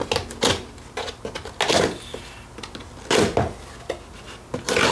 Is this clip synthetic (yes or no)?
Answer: no